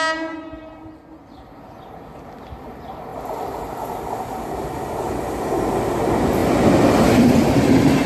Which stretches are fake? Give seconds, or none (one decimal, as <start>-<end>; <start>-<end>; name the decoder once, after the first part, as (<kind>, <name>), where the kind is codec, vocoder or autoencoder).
none